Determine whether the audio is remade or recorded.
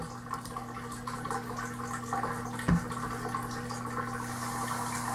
recorded